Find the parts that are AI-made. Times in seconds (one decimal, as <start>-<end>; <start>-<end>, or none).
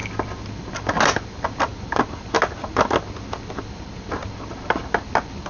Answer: none